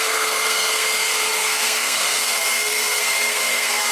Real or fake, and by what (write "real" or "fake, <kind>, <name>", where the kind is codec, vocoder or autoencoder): fake, codec, SNAC